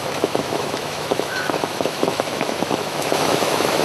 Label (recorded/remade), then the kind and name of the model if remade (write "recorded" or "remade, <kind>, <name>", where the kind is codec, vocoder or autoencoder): remade, autoencoder, DAC-VAE